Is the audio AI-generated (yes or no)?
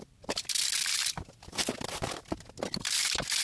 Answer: no